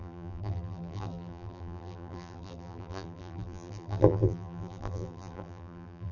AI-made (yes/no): yes